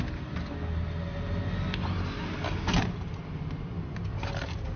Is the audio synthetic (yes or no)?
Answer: no